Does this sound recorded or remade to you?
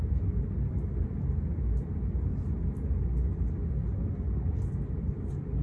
recorded